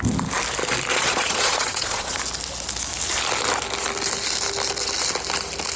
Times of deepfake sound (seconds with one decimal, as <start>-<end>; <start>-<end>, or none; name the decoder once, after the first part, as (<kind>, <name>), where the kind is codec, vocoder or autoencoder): 0.9-2.2 (vocoder, Vocos)